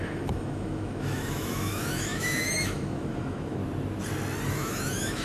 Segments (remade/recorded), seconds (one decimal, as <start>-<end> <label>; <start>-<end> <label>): 0.0-3.6 remade; 3.6-4.5 recorded; 4.5-5.2 remade